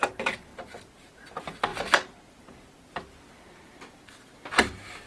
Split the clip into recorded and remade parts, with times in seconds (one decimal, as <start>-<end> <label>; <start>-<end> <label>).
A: 0.0-5.1 recorded